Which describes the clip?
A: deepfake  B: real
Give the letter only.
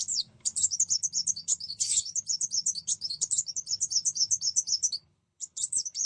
A